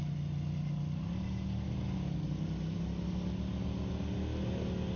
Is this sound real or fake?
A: real